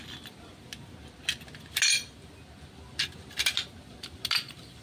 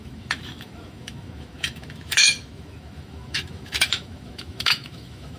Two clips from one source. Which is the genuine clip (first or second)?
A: first